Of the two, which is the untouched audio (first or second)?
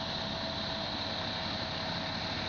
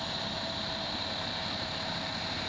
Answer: first